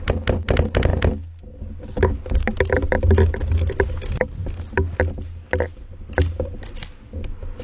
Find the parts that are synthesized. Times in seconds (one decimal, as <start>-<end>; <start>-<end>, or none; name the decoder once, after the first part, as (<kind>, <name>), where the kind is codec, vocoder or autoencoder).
5.8-6.7 (vocoder, BigVGAN v2)